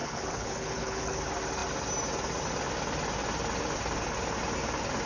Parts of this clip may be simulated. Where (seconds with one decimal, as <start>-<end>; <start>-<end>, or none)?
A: 0.0-1.2